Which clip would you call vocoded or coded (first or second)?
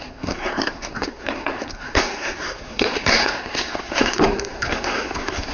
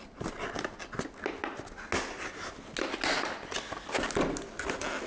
first